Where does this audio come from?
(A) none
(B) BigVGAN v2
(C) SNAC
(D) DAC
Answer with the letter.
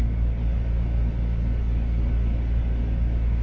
D